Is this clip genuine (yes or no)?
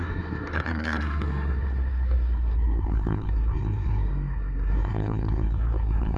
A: no